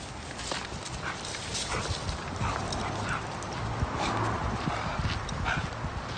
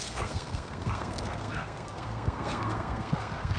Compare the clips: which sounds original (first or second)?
first